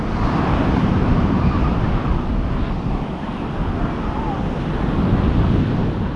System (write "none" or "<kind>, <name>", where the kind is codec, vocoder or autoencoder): none